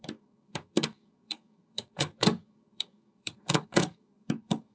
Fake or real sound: fake